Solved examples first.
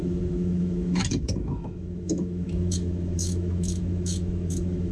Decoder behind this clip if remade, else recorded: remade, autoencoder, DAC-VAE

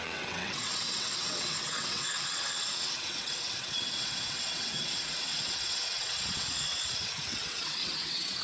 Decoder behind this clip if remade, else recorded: remade, vocoder, WaveNeXt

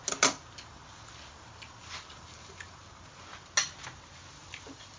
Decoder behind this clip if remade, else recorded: recorded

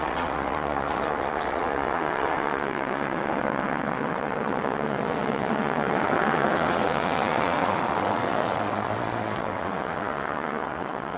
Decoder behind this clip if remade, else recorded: remade, vocoder, WaveNeXt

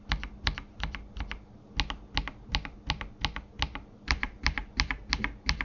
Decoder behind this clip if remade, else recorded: recorded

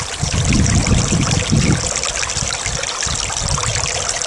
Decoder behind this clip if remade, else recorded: recorded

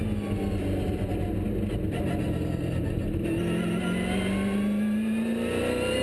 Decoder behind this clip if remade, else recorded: recorded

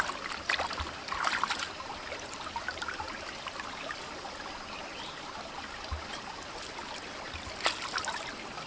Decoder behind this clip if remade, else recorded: recorded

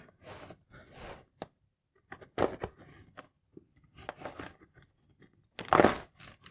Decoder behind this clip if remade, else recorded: recorded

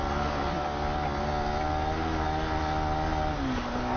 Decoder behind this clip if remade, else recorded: recorded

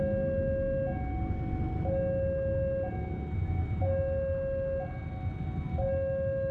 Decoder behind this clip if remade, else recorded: recorded